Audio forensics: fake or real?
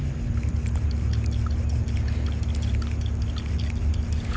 real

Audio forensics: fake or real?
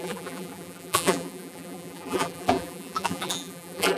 fake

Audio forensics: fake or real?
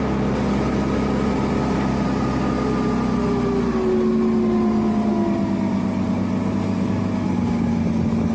real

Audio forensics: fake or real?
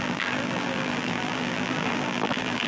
fake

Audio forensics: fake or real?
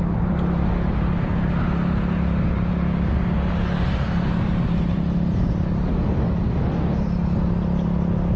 real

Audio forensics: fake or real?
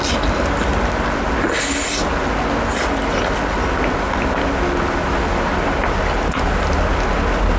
real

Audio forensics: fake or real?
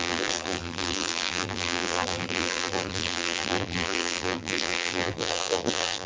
fake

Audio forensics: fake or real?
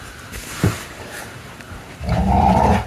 fake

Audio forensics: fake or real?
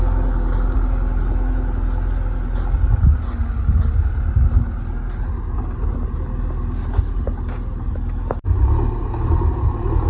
real